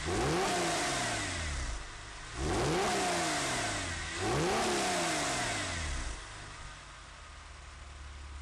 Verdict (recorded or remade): recorded